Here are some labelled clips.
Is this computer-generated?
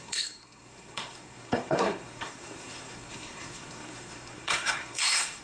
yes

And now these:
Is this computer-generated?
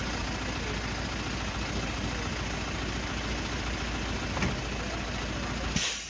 no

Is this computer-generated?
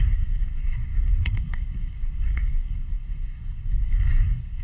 yes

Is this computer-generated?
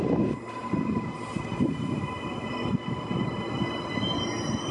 no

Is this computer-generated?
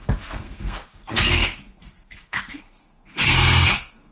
yes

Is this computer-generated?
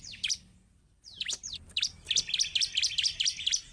no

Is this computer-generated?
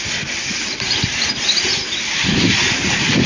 no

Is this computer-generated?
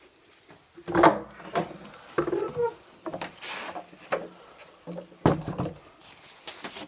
no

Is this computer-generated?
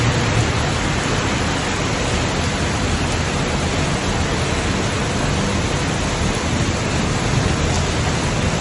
no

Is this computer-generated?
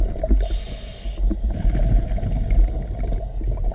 no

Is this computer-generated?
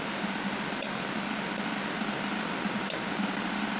no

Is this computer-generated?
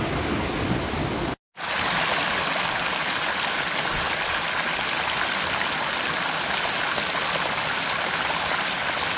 no